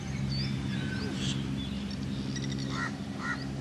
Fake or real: fake